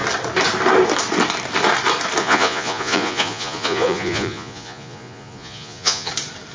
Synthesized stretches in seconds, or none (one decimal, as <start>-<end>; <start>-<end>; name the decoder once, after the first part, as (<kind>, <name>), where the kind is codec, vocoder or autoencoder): 2.2-6.1 (vocoder, Vocos)